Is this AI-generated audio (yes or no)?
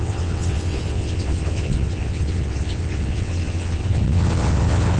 yes